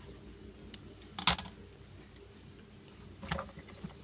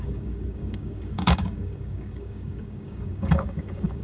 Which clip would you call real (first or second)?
first